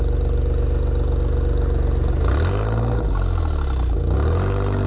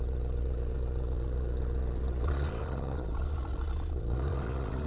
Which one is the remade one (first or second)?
second